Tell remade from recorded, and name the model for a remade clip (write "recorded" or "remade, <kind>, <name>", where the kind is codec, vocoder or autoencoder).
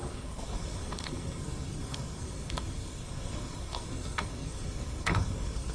remade, codec, SNAC